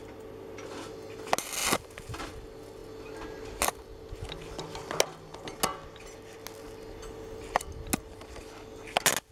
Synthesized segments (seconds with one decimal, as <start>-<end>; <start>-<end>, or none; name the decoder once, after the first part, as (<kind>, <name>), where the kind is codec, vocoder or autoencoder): none